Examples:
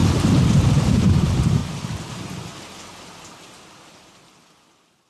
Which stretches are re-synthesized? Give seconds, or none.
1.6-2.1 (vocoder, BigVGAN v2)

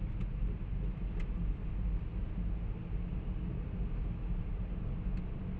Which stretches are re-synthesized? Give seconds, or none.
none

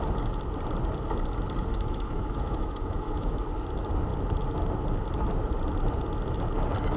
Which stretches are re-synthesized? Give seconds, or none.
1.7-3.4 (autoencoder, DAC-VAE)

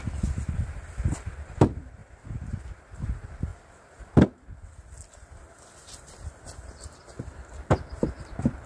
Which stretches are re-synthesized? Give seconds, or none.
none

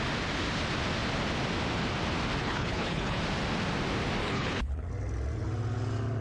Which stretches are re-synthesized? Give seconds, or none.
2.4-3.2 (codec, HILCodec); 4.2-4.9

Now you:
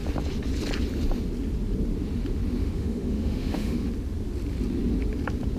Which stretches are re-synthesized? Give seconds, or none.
2.6-3.9 (autoencoder, DAC-VAE)

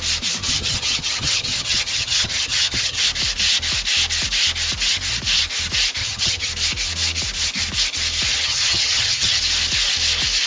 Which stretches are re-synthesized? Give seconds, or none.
0.4-3.0 (vocoder, HiFi-GAN); 6.0-6.5; 8.3-9.4